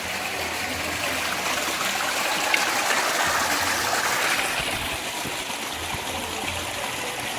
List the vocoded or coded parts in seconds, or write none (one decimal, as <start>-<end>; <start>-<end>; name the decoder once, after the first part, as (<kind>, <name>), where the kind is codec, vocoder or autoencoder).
none